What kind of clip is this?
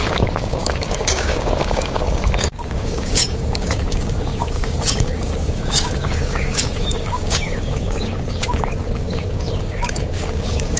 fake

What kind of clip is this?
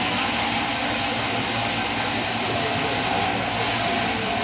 real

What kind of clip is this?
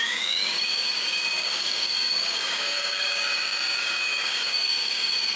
fake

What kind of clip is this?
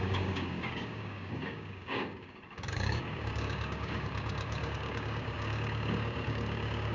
fake